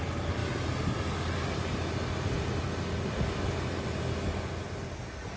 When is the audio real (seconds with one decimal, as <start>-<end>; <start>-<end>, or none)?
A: 0.0-5.4